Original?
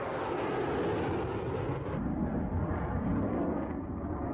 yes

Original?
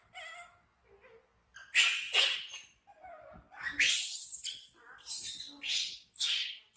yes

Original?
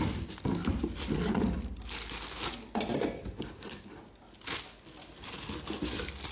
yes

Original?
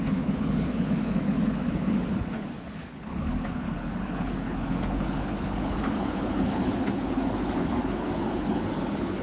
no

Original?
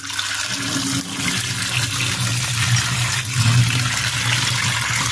yes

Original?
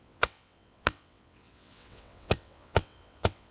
no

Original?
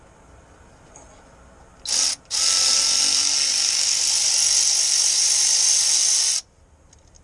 yes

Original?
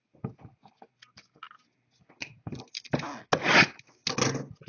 yes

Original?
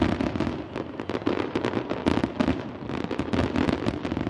yes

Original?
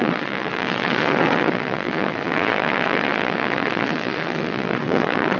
no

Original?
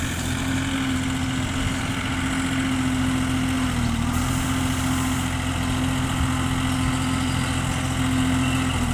yes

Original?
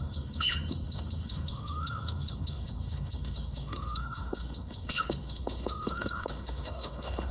no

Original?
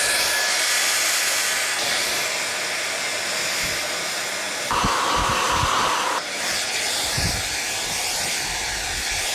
yes